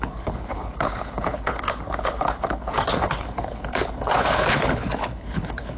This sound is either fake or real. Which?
fake